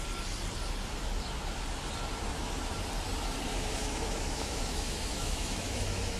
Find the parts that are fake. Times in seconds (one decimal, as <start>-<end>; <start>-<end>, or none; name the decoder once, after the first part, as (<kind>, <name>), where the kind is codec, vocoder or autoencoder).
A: 3.5-6.2 (autoencoder, DAC-VAE)